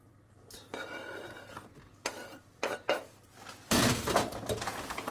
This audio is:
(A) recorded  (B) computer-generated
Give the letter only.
B